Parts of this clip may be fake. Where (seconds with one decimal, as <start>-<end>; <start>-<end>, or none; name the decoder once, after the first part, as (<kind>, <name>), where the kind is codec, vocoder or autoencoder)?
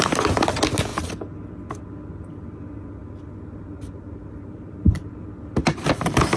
3.0-5.8 (vocoder, BigVGAN v2)